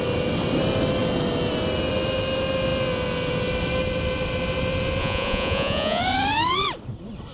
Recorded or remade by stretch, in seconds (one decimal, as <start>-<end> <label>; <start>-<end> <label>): 0.0-5.0 recorded; 5.0-6.0 remade; 6.0-7.3 recorded